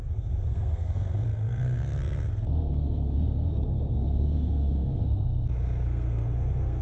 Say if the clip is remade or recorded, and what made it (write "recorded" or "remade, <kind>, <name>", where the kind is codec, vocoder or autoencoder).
remade, codec, SNAC